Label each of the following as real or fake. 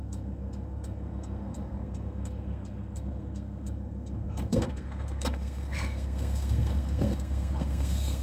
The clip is fake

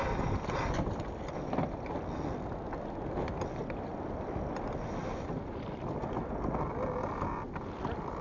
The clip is real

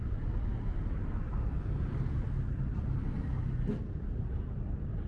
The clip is real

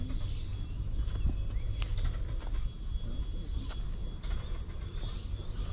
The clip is real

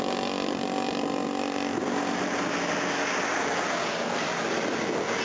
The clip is real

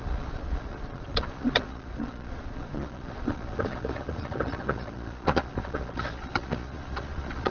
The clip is fake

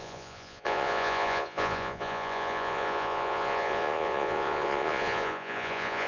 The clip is fake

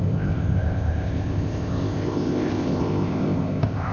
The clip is fake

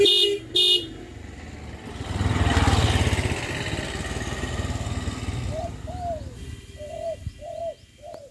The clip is real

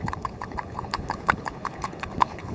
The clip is fake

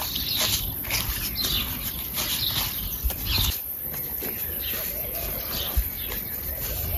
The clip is real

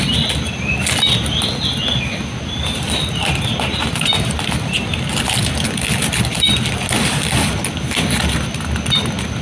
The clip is real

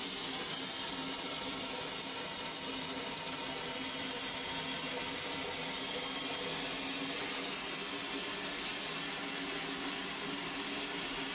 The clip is real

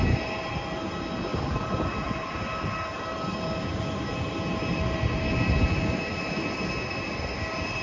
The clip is real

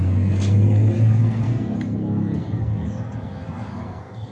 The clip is fake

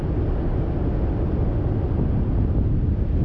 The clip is real